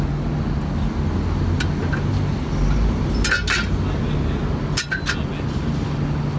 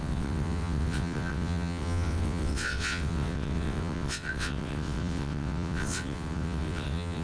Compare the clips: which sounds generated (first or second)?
second